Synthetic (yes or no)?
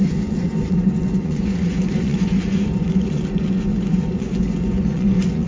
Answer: yes